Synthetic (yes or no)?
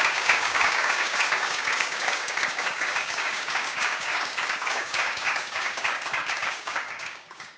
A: yes